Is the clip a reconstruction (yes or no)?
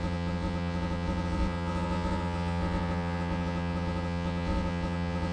yes